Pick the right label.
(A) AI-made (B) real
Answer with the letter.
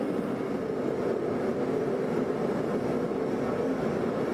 B